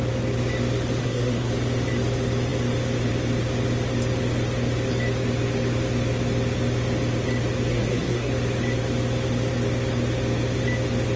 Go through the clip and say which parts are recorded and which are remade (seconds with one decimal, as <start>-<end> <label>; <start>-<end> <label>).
0.0-1.0 recorded; 1.0-1.5 remade; 1.5-7.7 recorded; 7.7-8.3 remade; 8.3-11.2 recorded